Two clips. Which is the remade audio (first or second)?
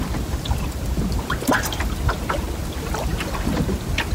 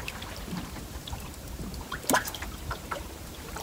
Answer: second